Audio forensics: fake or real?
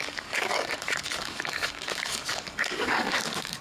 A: fake